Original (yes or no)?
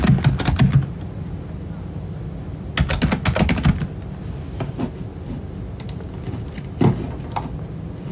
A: yes